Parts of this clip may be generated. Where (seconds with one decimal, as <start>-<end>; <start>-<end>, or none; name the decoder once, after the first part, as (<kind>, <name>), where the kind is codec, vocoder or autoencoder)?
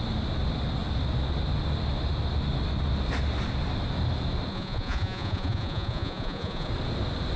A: 4.5-6.7 (vocoder, Vocos)